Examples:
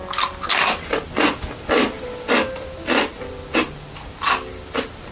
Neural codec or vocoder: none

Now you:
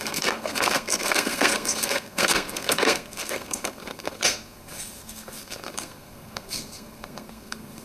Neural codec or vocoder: codec, SNAC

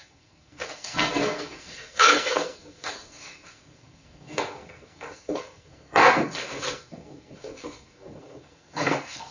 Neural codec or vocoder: codec, SNAC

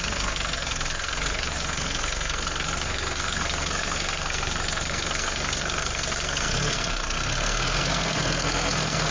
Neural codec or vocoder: codec, SNAC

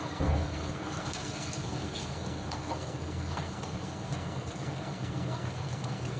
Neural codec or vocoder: codec, SNAC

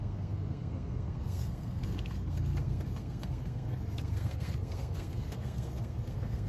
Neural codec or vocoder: codec, SNAC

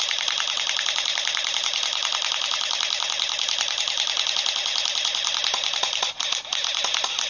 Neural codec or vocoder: none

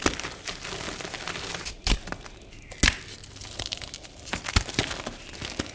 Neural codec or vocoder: none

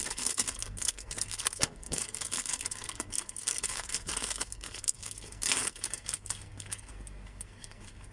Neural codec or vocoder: codec, SNAC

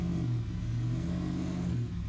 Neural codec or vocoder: codec, SNAC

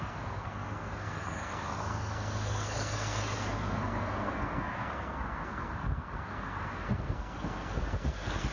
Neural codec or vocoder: codec, SNAC